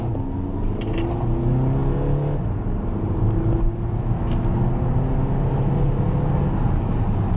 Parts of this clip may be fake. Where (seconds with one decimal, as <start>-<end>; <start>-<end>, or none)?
none